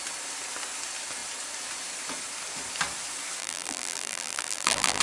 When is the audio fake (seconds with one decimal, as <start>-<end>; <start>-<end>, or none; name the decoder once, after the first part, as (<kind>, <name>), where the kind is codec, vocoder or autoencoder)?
3.4-5.0 (vocoder, BigVGAN v2)